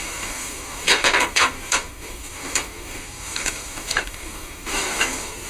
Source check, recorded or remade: remade